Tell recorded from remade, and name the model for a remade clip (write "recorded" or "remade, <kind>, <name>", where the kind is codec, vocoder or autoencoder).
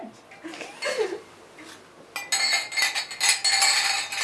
recorded